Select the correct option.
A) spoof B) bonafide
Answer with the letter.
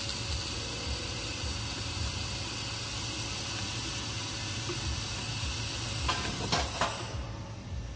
B